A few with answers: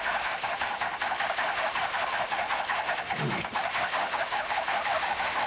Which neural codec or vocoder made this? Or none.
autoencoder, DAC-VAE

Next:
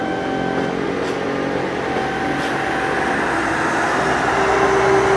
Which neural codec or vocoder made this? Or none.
none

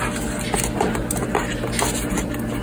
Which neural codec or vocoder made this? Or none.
none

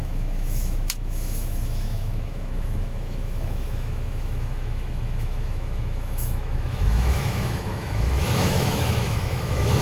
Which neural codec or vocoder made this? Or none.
autoencoder, DAC-VAE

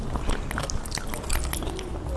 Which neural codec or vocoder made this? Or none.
none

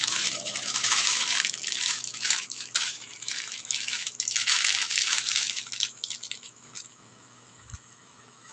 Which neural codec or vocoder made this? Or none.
autoencoder, DAC-VAE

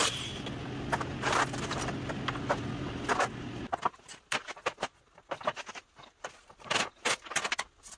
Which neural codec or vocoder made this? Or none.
none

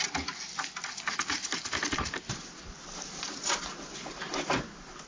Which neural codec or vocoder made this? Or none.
none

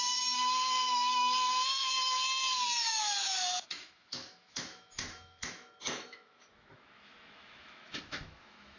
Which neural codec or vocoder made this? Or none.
autoencoder, DAC-VAE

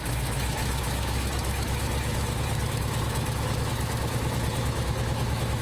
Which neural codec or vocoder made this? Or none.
autoencoder, DAC-VAE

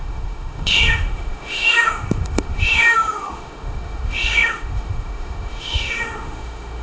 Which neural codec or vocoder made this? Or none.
autoencoder, DAC-VAE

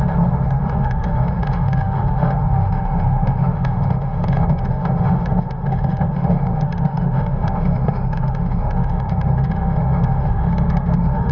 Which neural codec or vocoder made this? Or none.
autoencoder, DAC-VAE